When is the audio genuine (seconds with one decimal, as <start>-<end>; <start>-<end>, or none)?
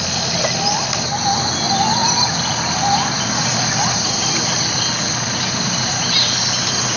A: 0.0-7.0